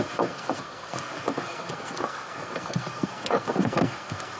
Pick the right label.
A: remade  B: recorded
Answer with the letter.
A